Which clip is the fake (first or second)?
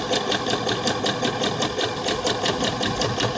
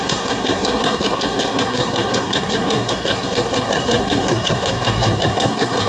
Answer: second